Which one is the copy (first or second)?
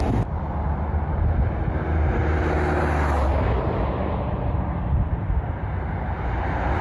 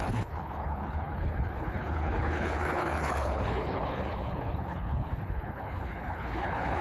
second